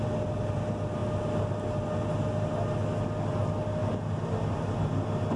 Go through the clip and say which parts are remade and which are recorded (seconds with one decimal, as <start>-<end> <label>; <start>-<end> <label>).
0.0-5.4 recorded